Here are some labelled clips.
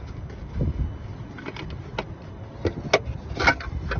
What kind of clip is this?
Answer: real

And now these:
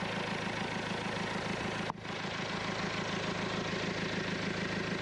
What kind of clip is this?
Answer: real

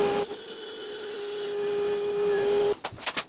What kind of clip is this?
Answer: real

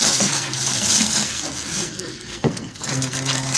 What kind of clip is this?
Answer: fake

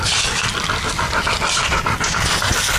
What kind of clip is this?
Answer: real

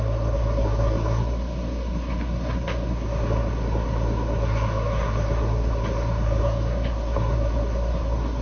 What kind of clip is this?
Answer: fake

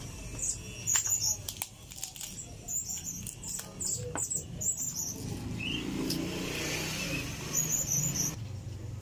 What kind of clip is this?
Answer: real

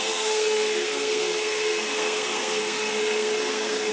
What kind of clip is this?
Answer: fake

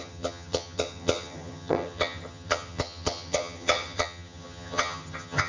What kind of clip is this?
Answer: fake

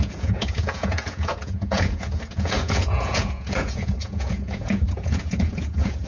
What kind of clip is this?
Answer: fake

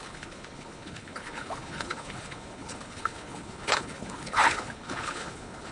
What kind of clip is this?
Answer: fake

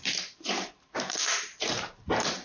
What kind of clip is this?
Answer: fake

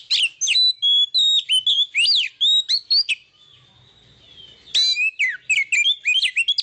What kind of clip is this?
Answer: real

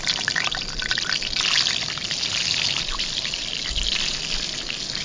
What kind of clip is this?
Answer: real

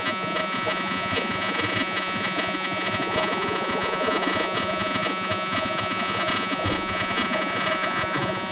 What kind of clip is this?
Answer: fake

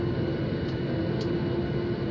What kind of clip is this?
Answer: real